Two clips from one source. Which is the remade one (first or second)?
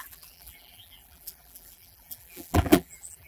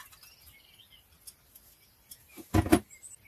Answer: first